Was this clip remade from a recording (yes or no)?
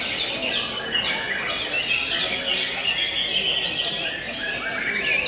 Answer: no